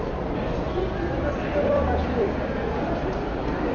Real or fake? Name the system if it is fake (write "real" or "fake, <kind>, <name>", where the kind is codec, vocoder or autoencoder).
fake, vocoder, BigVGAN v2